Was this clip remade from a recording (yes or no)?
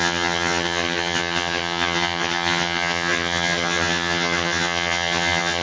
yes